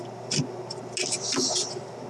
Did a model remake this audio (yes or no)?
no